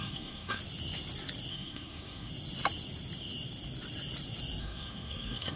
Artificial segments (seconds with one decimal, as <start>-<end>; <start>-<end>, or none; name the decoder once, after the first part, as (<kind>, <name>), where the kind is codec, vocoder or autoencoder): 0.0-0.6 (codec, SNAC); 1.5-2.3; 4.6-5.6